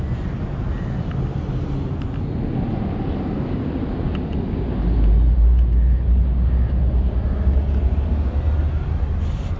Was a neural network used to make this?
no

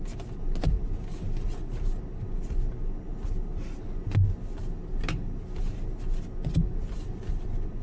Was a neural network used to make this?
no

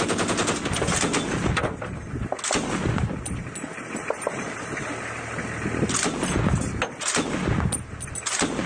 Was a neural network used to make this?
no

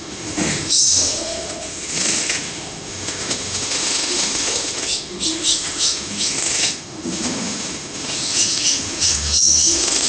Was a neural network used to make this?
yes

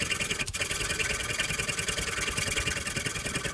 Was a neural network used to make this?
no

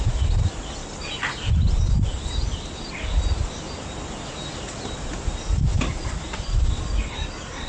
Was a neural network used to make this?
no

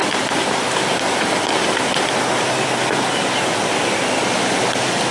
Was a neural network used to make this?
no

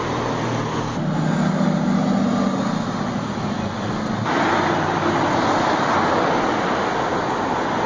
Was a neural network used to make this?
no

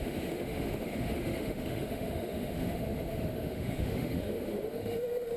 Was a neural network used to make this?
yes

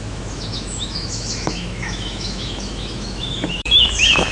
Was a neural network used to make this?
yes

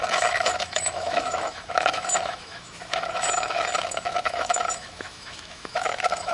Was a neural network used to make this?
yes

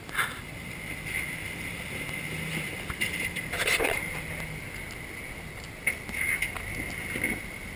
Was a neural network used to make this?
no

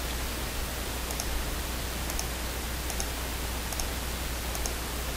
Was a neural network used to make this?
no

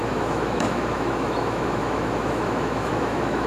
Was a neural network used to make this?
yes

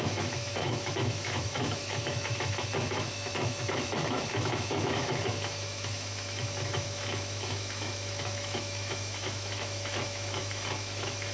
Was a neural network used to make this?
yes